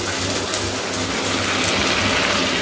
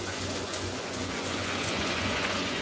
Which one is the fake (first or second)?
second